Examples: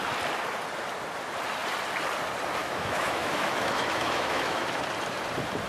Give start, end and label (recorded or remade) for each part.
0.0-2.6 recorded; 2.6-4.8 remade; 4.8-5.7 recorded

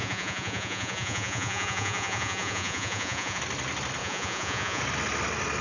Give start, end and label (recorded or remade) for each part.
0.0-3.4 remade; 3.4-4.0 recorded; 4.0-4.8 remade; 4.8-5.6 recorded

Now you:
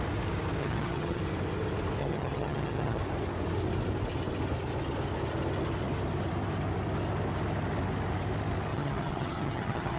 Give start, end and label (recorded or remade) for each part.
0.0-0.6 recorded; 0.6-1.2 remade; 1.2-2.0 recorded; 2.0-3.0 remade; 3.0-8.7 recorded; 8.7-10.0 remade

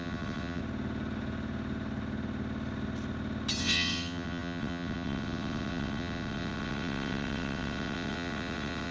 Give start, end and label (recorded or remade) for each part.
0.0-0.6 remade; 0.6-3.6 recorded; 3.6-8.9 remade